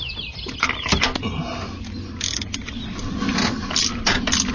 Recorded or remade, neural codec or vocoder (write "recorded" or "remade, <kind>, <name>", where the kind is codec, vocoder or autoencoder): recorded